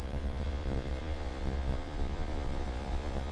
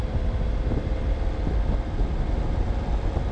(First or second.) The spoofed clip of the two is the first